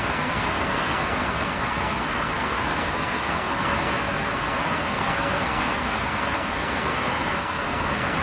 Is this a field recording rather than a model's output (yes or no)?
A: no